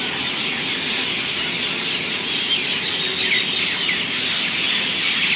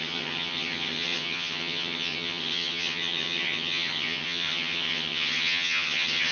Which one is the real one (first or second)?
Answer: first